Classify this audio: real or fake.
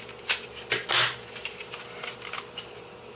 real